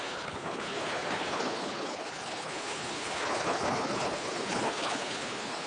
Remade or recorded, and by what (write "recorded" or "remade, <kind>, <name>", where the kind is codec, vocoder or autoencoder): remade, codec, HILCodec